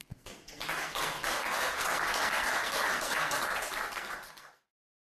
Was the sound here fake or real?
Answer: fake